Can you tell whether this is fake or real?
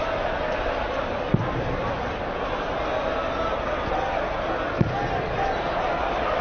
real